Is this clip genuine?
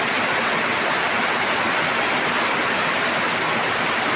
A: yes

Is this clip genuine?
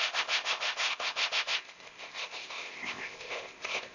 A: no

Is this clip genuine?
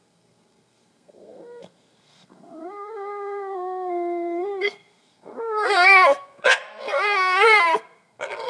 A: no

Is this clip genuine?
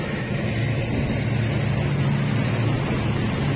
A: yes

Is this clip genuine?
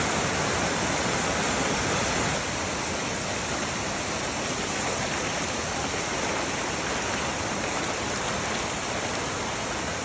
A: yes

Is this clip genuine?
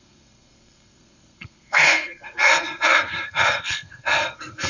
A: no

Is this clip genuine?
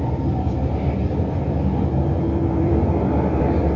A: no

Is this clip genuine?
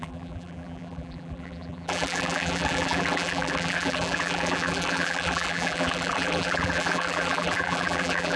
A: no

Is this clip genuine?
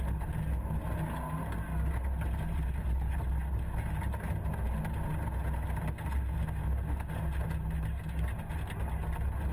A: yes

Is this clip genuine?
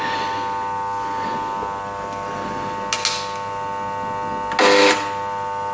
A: yes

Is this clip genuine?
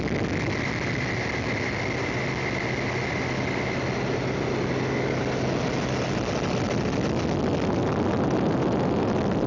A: yes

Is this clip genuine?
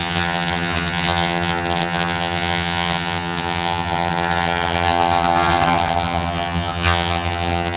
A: no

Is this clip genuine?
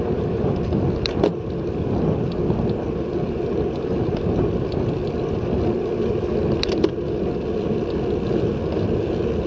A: yes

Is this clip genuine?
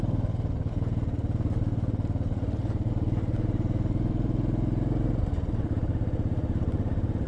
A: yes